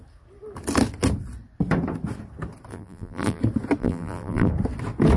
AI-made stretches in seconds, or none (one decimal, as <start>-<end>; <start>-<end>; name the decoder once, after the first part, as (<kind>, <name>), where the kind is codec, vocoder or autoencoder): 2.7-3.4 (vocoder, BigVGAN v2); 3.8-4.5